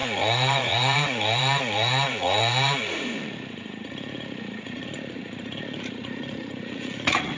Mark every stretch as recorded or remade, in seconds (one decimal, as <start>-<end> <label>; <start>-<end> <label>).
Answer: 0.0-7.4 remade